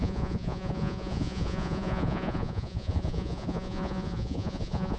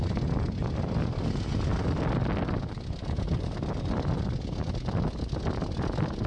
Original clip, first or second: second